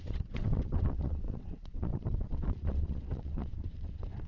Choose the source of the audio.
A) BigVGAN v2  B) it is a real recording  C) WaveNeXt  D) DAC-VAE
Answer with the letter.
C